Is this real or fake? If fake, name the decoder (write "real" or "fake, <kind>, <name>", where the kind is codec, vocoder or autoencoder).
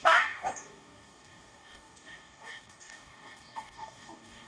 fake, codec, DAC